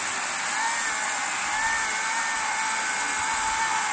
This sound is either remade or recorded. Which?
recorded